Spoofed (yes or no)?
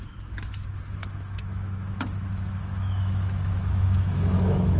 yes